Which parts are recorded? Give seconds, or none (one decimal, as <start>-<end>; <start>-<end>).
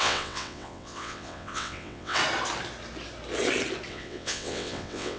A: 2.2-3.9